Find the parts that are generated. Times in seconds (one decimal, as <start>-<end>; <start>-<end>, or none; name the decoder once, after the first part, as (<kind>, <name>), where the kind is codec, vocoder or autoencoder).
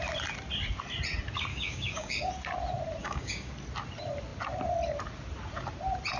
1.5-2.3 (codec, DAC); 3.0-3.5